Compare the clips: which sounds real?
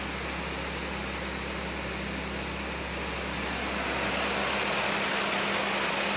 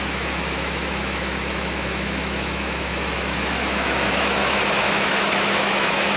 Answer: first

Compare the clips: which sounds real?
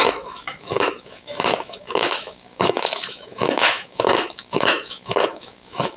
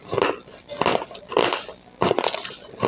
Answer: second